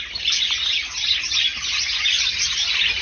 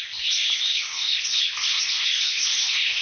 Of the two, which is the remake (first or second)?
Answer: second